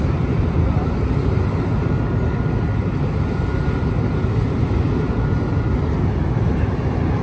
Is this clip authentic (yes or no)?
yes